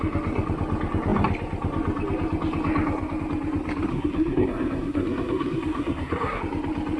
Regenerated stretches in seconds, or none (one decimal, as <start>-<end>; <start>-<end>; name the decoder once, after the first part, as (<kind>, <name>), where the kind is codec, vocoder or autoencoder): 3.9-6.4 (codec, SNAC)